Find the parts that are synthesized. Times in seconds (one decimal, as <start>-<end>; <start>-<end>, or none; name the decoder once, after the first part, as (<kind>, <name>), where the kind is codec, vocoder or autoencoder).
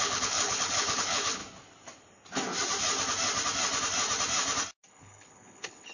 0.0-1.4 (codec, HILCodec); 4.9-5.9